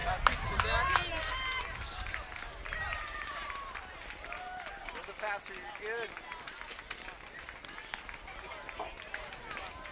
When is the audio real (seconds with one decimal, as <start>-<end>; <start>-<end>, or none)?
0.6-1.1; 3.6-9.9